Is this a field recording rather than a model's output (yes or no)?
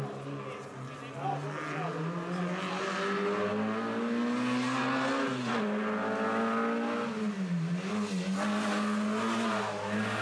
yes